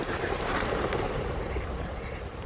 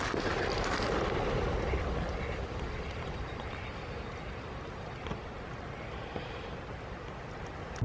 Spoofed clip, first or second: first